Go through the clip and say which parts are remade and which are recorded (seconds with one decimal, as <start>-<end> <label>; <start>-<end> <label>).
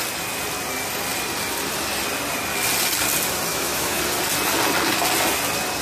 0.0-3.5 recorded; 3.5-4.0 remade; 4.0-5.8 recorded